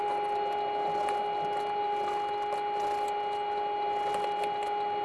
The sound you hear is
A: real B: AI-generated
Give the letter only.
A